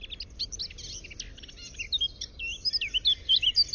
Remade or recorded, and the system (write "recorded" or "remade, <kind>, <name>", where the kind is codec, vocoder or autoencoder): recorded